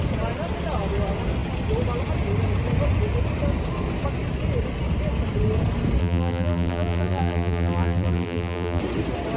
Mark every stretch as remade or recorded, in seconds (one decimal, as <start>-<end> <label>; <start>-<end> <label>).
0.0-6.0 recorded; 6.0-8.8 remade; 8.8-9.4 recorded